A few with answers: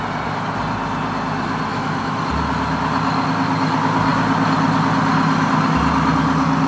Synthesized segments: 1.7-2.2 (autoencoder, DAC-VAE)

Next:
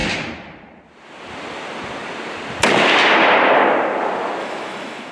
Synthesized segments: 4.4-5.1 (autoencoder, DAC-VAE)

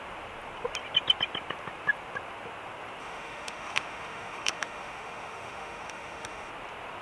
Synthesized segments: 3.0-6.5 (autoencoder, DAC-VAE)

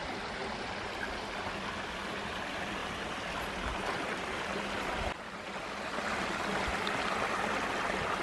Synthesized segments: none

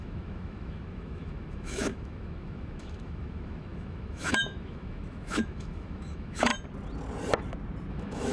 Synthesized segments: 0.0-6.5 (autoencoder, DAC-VAE); 7.9-8.3

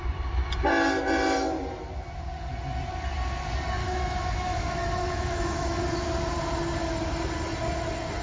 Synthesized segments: 3.8-5.8 (autoencoder, DAC-VAE)

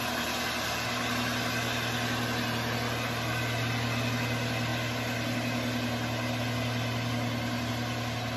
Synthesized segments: none

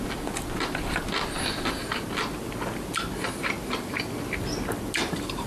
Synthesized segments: none